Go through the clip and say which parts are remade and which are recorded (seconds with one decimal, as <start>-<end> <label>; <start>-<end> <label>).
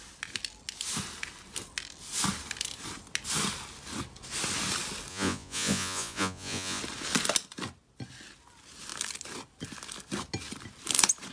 0.0-5.1 recorded; 5.1-6.8 remade; 6.8-11.3 recorded